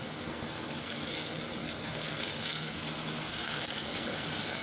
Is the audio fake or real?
fake